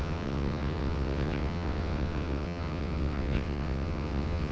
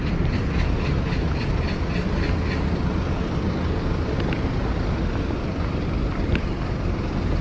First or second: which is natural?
second